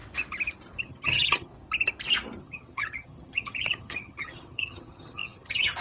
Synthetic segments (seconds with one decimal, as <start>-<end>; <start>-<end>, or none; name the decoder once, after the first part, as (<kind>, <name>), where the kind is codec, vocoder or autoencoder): 0.8-1.5 (vocoder, HiFi-GAN); 2.4-5.8